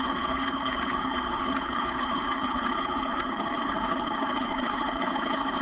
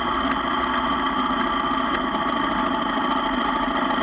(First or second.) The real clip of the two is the second